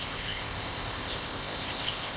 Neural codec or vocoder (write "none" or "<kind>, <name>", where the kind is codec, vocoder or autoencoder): codec, ZipCodec